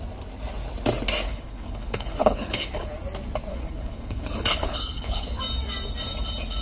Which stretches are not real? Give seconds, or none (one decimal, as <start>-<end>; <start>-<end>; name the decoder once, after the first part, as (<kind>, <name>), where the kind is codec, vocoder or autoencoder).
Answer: 1.3-2.9 (codec, HILCodec); 3.5-5.4